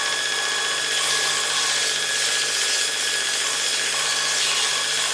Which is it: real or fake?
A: real